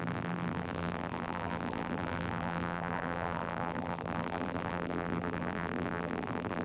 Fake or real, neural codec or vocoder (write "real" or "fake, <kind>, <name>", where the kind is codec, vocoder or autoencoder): fake, vocoder, BigVGAN v2